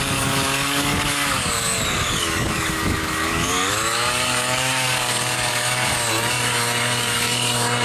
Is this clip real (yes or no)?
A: no